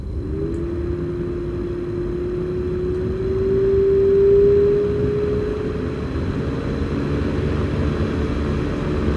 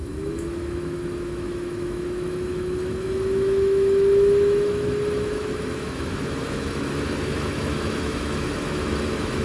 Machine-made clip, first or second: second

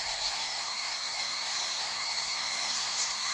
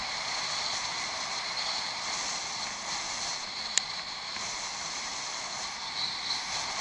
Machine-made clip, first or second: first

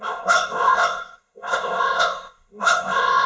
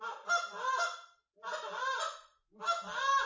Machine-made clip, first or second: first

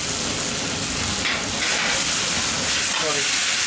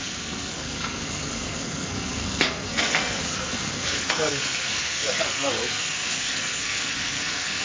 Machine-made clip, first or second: second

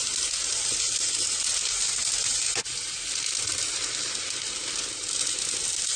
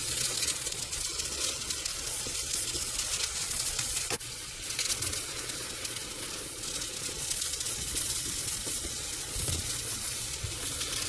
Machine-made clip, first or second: second